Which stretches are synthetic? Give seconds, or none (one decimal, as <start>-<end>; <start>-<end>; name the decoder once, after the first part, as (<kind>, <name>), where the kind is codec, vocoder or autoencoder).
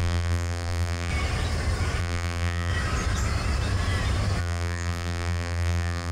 0.0-1.1 (vocoder, BigVGAN v2); 2.0-2.7; 4.4-6.1